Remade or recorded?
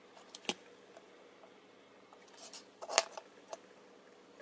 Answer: recorded